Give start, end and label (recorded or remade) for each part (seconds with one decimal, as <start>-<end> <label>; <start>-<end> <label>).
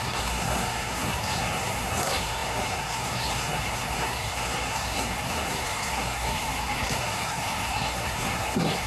0.0-8.9 remade